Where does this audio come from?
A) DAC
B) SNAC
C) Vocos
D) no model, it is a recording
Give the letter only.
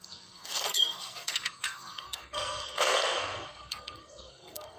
B